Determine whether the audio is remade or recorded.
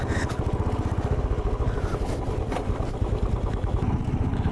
recorded